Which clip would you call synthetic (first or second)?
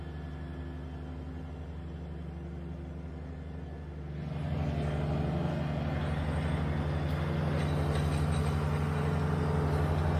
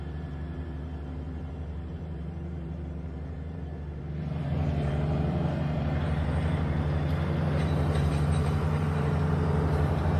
second